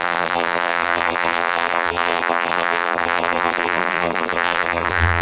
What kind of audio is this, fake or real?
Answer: fake